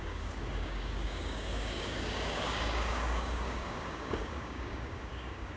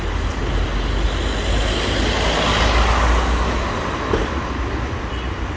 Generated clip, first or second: first